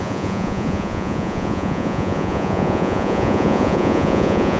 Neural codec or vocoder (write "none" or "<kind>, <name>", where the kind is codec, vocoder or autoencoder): vocoder, Vocos